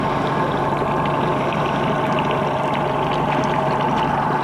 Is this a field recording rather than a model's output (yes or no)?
yes